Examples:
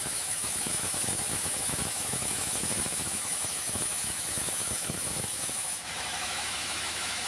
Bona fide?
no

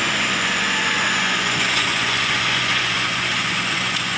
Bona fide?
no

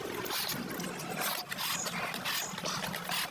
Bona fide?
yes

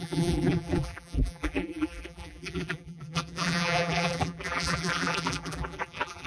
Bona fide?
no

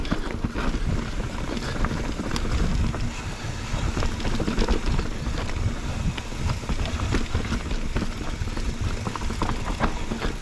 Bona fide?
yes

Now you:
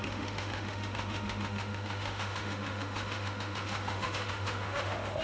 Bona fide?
no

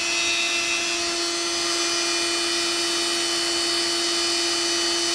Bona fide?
yes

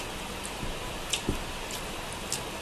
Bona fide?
yes